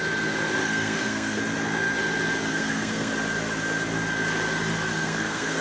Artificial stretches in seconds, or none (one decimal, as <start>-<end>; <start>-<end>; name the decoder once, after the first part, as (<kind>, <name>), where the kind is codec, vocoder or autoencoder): 0.6-1.4 (codec, SNAC); 2.5-3.1; 4.9-5.6